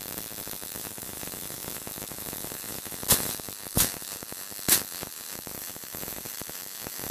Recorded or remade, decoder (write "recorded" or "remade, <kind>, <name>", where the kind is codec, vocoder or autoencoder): remade, autoencoder, DAC-VAE